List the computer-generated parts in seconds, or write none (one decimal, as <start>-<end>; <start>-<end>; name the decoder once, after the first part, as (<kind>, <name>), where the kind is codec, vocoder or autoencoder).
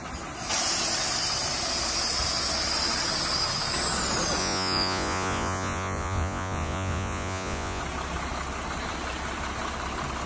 4.4-7.8 (vocoder, Vocos)